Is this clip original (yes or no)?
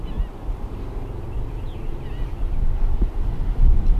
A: yes